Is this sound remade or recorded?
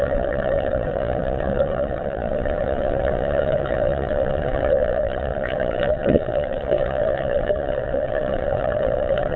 remade